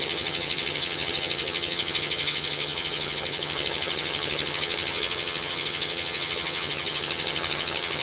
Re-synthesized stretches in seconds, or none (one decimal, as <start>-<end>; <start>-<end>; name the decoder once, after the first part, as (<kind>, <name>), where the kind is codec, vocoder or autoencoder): 0.0-8.0 (vocoder, HiFi-GAN)